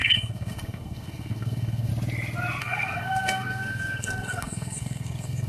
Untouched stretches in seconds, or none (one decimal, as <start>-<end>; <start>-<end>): 1.9-2.6